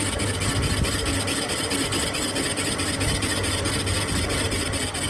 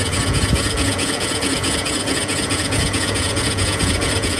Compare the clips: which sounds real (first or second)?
first